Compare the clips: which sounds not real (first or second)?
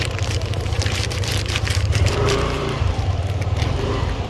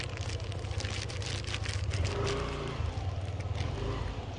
first